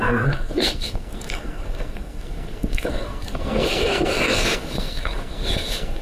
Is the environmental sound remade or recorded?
remade